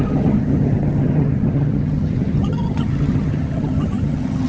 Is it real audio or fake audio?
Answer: fake